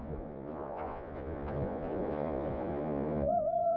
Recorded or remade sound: remade